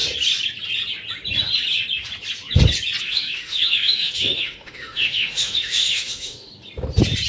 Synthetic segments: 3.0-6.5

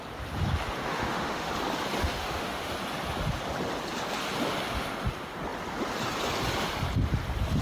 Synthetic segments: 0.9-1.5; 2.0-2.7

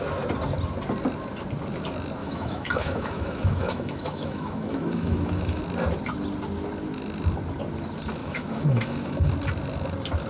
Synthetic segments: 2.2-5.6; 8.2-9.3

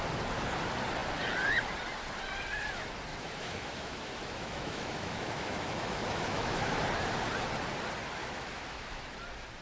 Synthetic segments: 3.1-6.8; 8.2-9.0

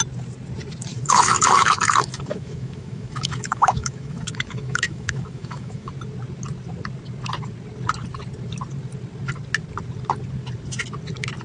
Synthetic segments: 0.9-5.9